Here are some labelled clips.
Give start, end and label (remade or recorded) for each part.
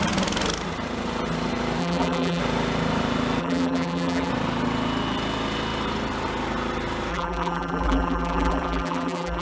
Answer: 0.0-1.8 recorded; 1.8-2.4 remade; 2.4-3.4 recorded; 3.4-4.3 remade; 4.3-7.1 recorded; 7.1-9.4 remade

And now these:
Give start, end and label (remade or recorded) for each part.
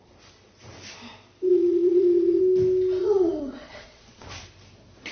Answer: 0.0-1.5 recorded; 1.5-2.4 remade; 2.4-3.0 recorded; 3.0-4.3 remade; 4.3-5.1 recorded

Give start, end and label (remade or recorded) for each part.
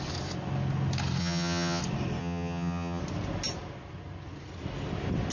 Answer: 0.0-1.2 recorded; 1.2-1.8 remade; 1.8-2.2 recorded; 2.2-3.0 remade; 3.0-5.3 recorded